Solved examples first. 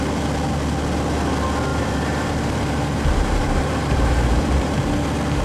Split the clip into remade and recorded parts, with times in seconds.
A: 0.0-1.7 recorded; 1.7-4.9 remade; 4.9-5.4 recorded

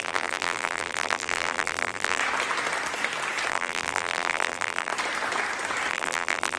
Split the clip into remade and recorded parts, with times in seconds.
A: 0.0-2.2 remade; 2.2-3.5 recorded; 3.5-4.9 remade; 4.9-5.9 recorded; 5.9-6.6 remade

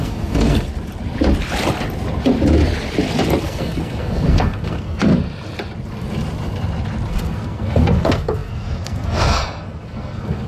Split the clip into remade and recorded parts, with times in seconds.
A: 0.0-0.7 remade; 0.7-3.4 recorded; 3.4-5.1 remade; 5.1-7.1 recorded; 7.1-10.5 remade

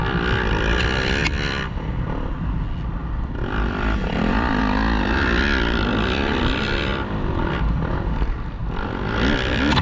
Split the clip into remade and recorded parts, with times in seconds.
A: 0.0-3.0 recorded; 3.0-4.6 remade; 4.6-6.9 recorded; 6.9-7.9 remade; 7.9-9.8 recorded